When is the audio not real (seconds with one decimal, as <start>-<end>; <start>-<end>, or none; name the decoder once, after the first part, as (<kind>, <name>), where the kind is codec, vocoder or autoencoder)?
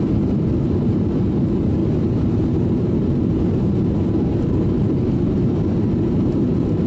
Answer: 0.0-6.9 (vocoder, BigVGAN v2)